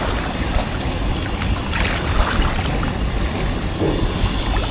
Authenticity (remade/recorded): recorded